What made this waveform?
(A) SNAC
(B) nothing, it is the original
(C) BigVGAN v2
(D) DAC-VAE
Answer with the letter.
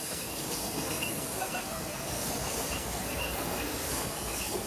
A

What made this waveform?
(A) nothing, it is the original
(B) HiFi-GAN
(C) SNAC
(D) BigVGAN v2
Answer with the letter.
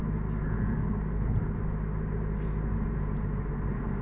A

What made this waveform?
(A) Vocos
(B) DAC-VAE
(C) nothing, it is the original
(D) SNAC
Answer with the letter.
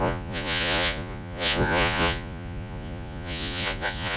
A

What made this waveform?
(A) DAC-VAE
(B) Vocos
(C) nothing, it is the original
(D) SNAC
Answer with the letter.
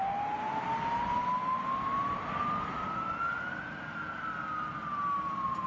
C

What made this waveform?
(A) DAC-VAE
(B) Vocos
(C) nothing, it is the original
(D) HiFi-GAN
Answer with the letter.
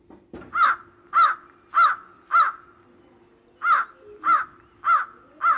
C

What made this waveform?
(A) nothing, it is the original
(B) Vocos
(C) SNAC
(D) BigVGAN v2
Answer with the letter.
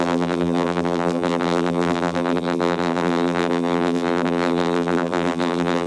D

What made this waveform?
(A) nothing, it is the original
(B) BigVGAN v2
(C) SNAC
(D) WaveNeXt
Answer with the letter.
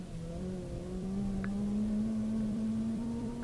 B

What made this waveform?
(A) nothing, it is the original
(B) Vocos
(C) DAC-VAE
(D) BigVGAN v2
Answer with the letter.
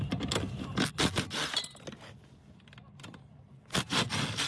A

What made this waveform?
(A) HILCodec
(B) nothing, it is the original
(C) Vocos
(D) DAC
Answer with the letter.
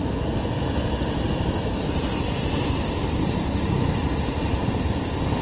B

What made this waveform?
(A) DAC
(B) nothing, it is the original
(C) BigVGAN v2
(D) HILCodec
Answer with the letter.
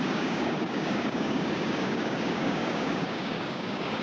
A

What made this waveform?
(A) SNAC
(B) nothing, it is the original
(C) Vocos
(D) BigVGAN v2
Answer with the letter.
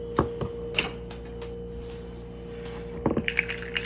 B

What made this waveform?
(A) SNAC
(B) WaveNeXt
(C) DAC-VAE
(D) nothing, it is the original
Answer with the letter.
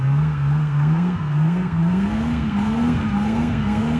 A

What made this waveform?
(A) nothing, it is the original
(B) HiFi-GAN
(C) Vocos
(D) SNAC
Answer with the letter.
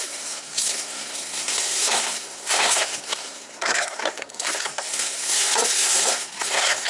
D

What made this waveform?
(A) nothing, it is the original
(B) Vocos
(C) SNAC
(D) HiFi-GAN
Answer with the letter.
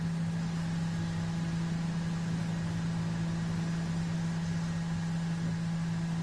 A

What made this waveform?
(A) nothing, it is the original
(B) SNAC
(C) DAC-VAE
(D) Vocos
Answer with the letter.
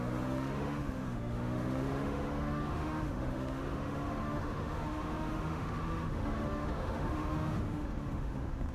C